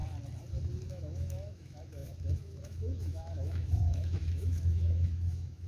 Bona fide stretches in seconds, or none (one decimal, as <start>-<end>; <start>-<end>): 0.0-0.9